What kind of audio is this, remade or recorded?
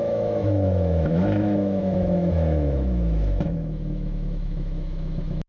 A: remade